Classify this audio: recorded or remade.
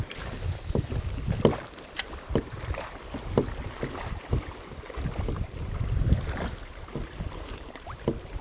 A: recorded